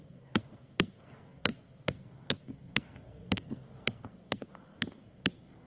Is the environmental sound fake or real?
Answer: fake